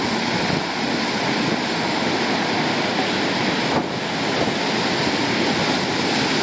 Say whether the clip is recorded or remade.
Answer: recorded